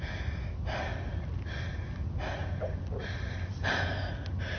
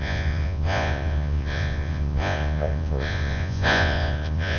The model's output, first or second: second